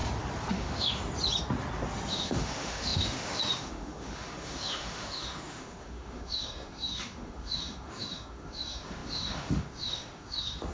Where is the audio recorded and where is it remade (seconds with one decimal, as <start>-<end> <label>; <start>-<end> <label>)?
0.0-0.5 recorded; 0.5-1.0 remade; 1.0-2.1 recorded; 2.1-10.7 remade